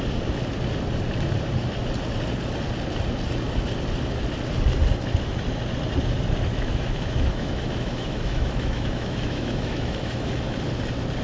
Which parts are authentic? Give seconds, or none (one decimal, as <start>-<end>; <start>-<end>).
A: 0.0-6.5; 10.3-11.2